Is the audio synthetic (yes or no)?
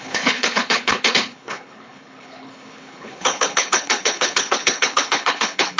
yes